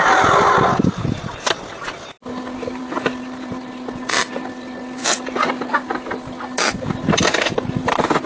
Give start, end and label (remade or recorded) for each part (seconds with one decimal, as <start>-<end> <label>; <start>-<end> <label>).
0.0-2.8 recorded; 2.8-3.5 remade; 3.5-8.3 recorded